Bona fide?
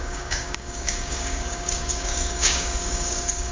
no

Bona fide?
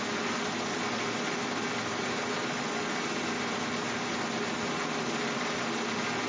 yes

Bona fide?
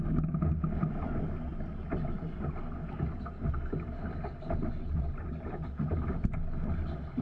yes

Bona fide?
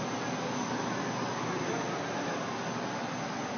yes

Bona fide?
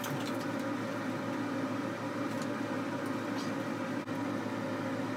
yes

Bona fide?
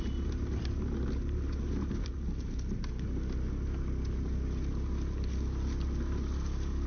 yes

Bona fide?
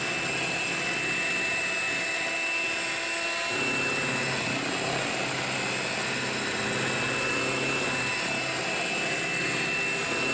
yes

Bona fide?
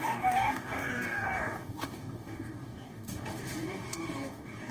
no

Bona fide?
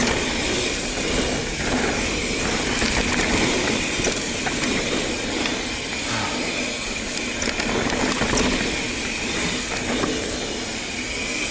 yes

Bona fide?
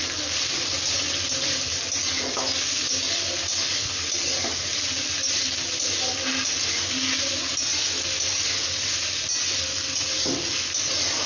yes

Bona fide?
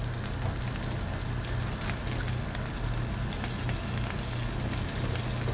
yes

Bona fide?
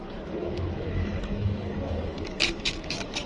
no